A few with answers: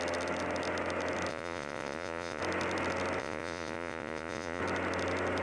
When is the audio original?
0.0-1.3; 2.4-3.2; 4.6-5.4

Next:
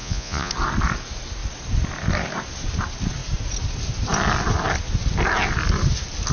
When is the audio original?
0.5-6.3

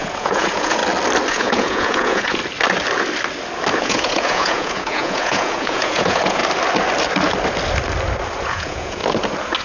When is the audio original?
0.8-1.3; 2.4-3.8; 6.4-8.4; 9.0-9.6